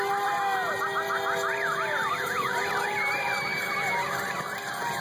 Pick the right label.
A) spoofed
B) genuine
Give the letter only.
A